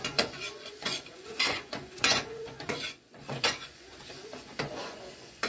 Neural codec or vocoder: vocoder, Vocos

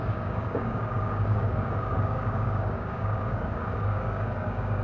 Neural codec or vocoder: codec, DAC